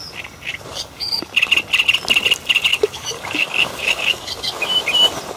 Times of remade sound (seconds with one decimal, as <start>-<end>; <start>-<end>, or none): 0.5-1.2; 2.7-4.8